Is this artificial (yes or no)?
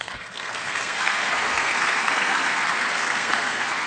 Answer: yes